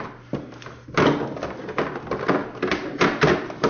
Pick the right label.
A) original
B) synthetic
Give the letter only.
A